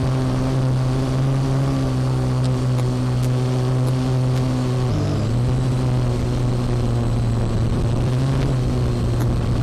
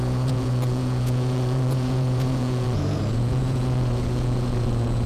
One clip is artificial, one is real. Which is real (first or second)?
first